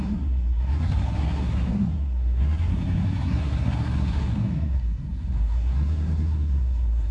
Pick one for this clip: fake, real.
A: fake